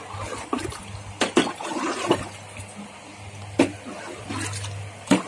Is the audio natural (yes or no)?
yes